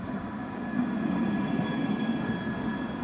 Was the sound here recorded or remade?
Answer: recorded